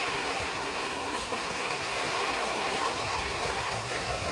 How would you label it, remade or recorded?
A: remade